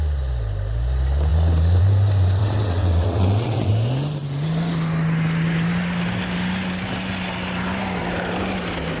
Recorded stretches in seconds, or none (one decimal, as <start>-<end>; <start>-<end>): 0.0-2.4; 3.7-9.0